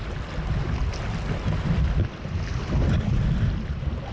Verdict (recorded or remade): recorded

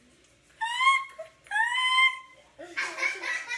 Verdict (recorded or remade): recorded